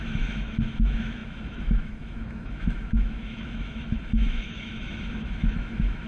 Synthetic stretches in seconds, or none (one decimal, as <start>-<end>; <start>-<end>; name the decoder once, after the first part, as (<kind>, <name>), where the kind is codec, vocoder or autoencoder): 0.0-6.1 (autoencoder, DAC-VAE)